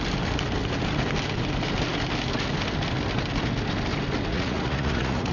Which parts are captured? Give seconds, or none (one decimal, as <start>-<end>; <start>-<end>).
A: 0.0-4.3